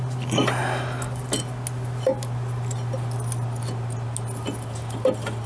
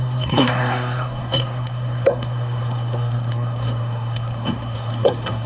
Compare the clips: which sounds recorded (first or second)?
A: first